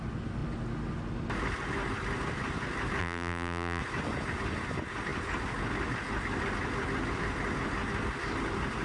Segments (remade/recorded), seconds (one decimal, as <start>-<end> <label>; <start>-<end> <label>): 0.0-3.0 recorded; 3.0-3.8 remade; 3.8-8.8 recorded